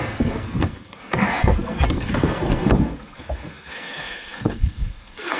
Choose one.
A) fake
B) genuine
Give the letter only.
A